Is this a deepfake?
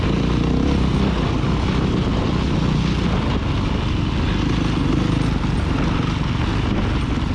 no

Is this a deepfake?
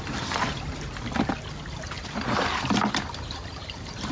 no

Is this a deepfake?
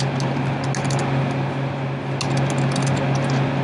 no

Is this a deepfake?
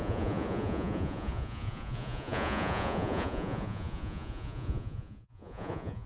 yes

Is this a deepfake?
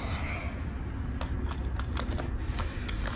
no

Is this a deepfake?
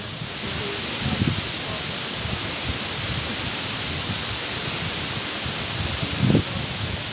no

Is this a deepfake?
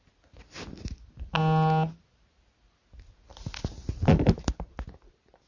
no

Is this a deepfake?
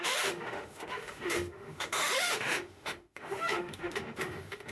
yes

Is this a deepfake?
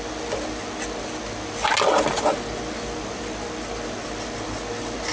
no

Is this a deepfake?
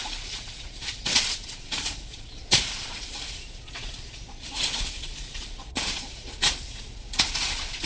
yes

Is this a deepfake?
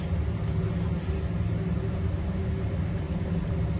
no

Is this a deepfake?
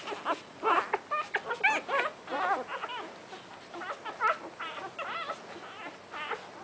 no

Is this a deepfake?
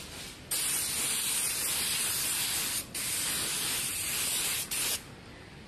no